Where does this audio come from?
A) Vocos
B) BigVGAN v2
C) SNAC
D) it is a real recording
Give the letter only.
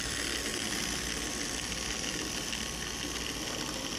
D